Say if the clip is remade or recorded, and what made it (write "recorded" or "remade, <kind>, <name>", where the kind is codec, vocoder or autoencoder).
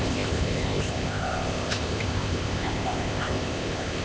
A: remade, codec, ZipCodec